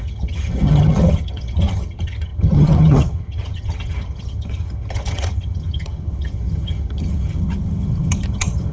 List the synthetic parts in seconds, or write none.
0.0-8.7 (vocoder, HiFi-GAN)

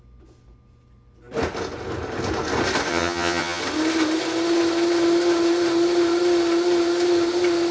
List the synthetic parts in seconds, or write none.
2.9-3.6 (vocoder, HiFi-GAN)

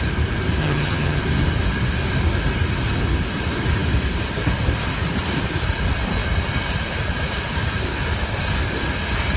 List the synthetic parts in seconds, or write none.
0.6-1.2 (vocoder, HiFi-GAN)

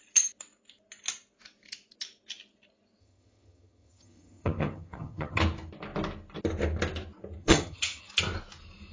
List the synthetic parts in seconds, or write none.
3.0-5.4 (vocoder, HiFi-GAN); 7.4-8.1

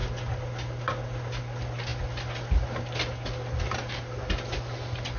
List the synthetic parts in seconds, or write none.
none

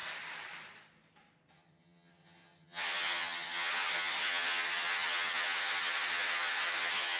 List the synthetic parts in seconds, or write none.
1.5-7.2 (vocoder, HiFi-GAN)

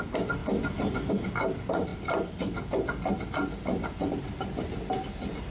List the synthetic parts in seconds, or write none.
none

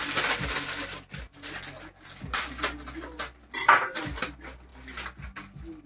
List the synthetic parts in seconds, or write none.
none